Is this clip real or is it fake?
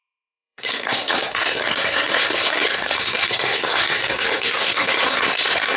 fake